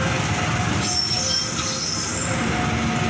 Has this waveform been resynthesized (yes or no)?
no